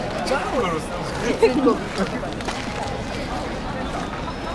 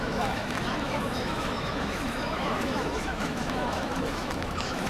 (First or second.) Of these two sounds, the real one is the first